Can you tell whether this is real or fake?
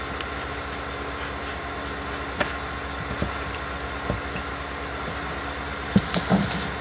real